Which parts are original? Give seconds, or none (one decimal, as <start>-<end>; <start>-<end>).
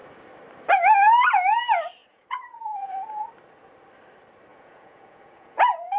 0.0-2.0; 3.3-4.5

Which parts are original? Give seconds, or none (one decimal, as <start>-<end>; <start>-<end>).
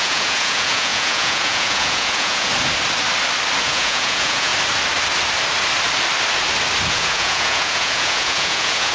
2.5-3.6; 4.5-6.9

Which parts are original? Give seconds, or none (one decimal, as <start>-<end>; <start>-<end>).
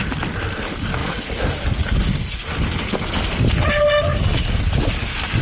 0.0-5.4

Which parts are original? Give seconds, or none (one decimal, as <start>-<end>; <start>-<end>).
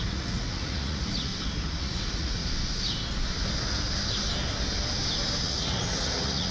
1.3-1.8; 2.4-5.4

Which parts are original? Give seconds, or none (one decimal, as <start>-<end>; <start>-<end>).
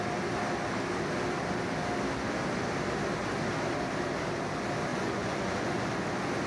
0.0-4.9; 5.8-6.5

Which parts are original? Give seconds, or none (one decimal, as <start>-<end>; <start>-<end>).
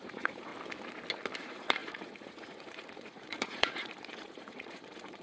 0.5-1.4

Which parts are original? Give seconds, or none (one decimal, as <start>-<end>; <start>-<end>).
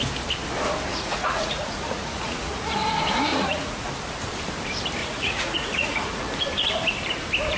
0.0-0.9; 2.7-3.3; 3.9-5.0; 6.3-7.6